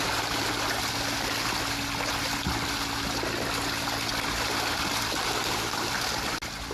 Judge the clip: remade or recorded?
recorded